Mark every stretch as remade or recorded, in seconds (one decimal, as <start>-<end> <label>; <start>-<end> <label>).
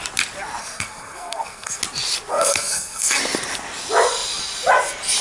0.0-0.6 recorded; 0.6-1.8 remade; 1.8-2.3 recorded; 2.3-3.2 remade; 3.2-5.2 recorded